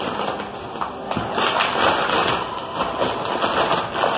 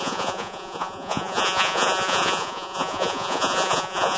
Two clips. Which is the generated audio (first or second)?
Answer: second